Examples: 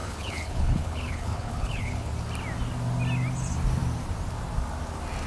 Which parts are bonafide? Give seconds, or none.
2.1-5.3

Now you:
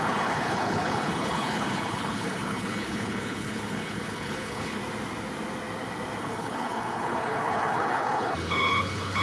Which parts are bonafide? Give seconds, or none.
4.8-6.2

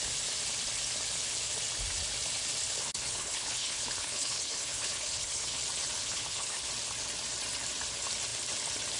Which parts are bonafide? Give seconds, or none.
0.0-2.8; 5.6-6.0; 6.7-9.0